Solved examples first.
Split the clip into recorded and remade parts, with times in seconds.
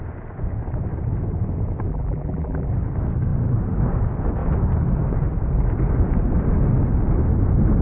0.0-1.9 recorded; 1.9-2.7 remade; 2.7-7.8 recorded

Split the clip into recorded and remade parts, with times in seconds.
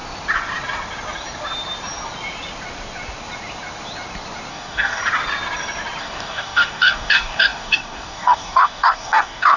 0.0-4.5 recorded; 4.5-5.0 remade; 5.0-6.0 recorded; 6.0-9.6 remade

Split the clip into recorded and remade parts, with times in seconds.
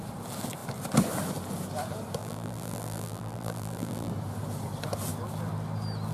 0.0-2.2 recorded; 2.2-4.1 remade; 4.1-6.1 recorded